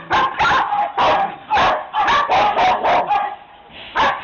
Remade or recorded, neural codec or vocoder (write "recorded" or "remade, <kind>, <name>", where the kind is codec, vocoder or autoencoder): recorded